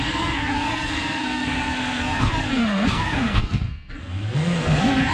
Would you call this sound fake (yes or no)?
yes